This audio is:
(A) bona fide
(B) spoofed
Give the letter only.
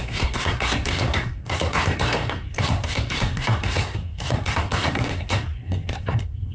B